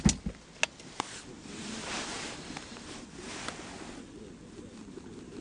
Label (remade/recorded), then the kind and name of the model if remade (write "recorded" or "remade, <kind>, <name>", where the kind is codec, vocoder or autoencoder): recorded